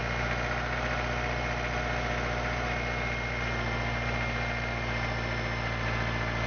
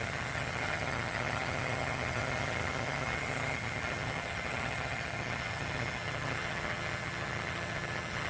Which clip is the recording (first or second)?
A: first